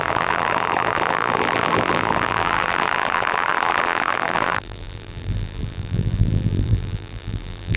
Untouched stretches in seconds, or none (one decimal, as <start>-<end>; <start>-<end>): none